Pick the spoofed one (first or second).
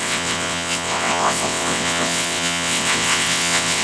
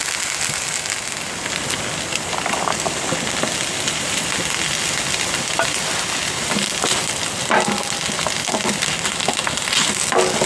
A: first